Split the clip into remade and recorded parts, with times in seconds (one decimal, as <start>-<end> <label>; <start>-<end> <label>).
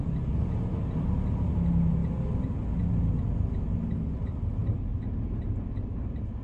0.0-6.4 recorded